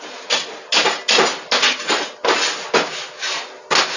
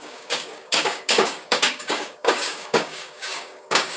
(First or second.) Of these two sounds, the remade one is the second